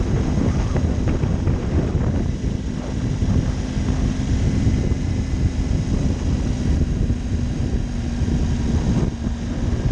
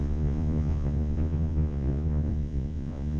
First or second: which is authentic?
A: first